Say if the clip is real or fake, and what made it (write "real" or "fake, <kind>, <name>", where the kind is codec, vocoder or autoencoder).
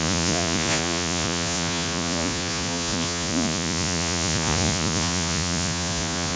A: fake, vocoder, Vocos